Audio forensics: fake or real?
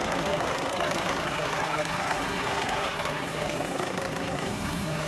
fake